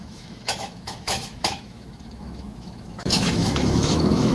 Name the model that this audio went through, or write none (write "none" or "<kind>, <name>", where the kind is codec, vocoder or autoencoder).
autoencoder, DAC-VAE